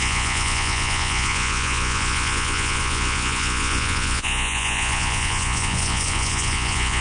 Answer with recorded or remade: remade